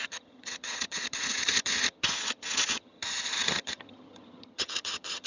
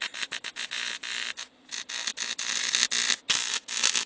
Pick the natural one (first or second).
second